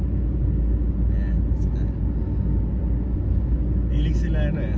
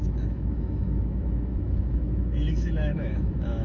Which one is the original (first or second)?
first